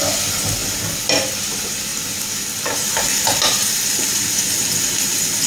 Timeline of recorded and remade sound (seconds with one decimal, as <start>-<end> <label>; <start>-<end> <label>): 0.0-1.9 recorded; 1.9-5.5 remade